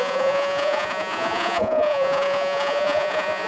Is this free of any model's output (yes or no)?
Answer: no